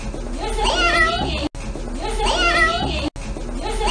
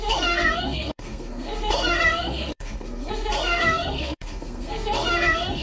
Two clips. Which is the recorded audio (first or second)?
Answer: first